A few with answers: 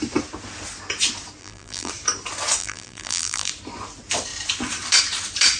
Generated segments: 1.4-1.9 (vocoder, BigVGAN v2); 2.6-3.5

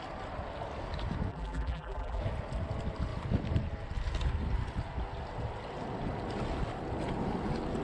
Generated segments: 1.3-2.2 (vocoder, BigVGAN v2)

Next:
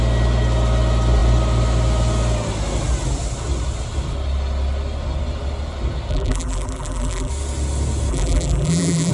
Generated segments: 6.1-7.3 (vocoder, BigVGAN v2); 8.1-9.1